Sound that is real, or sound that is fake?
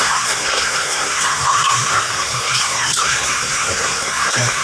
fake